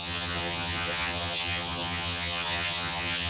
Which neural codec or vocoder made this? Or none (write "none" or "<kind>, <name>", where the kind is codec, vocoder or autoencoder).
vocoder, HiFi-GAN